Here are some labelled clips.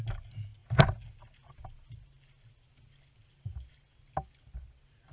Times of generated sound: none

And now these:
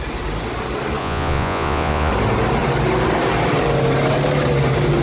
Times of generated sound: 1.0-2.1 (vocoder, Vocos)

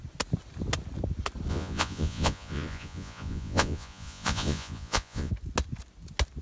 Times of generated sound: 1.5-5.3 (vocoder, Vocos)

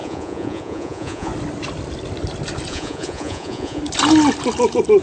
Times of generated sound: 0.0-1.3 (vocoder, Vocos); 2.7-3.8